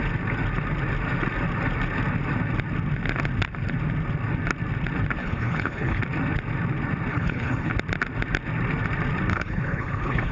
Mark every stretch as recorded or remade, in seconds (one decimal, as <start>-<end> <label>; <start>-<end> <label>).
0.0-5.2 recorded; 5.2-6.0 remade; 6.0-7.1 recorded; 7.1-7.7 remade; 7.7-9.3 recorded; 9.3-10.3 remade